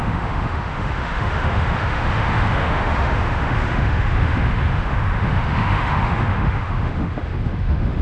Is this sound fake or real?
fake